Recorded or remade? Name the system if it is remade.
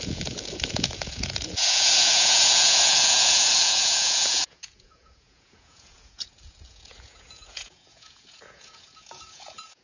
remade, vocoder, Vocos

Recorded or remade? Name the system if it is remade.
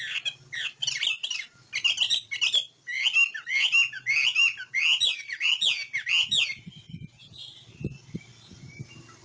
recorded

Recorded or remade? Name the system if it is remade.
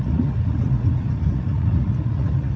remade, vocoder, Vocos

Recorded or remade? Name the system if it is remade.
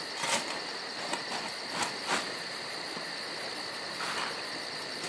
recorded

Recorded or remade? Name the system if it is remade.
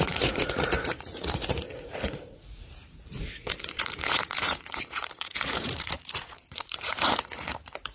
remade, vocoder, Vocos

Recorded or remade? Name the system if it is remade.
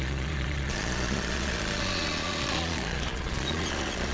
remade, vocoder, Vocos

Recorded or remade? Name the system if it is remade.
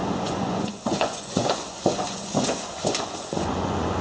remade, vocoder, Vocos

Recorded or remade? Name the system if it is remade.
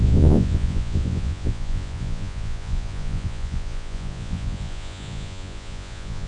remade, vocoder, Vocos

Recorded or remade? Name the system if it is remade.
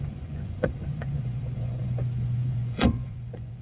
remade, vocoder, Vocos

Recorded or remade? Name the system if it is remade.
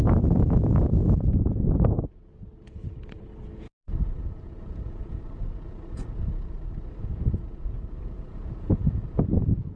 remade, vocoder, Vocos